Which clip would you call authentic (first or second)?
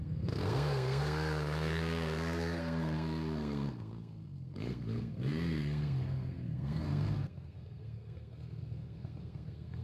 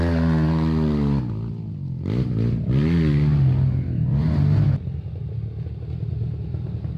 second